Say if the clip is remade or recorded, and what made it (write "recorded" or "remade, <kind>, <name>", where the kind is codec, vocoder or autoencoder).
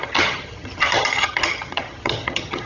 remade, vocoder, HiFi-GAN